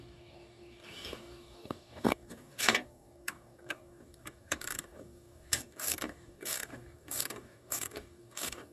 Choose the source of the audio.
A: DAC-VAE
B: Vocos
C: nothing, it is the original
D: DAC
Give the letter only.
D